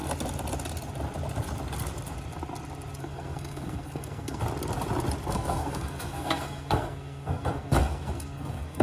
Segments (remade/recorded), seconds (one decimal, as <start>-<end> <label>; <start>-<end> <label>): 0.0-3.0 recorded; 3.0-4.4 remade; 4.4-5.3 recorded; 5.3-8.8 remade